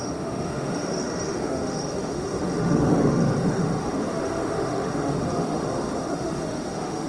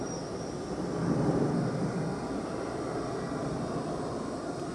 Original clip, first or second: second